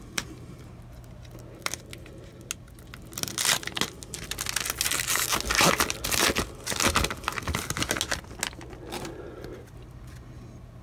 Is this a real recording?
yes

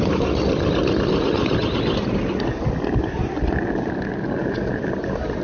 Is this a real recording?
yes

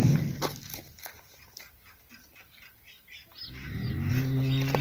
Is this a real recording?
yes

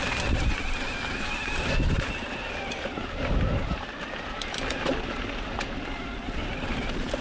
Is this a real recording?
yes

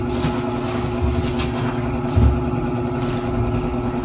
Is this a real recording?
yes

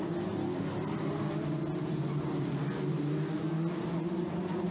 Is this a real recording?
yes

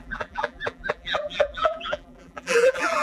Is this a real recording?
no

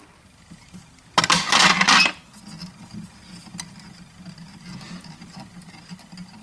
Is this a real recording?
yes